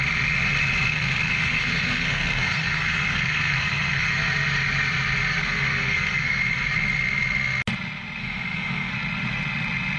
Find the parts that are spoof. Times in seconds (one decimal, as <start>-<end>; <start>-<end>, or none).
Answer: 0.9-4.1; 5.4-6.4; 8.2-8.9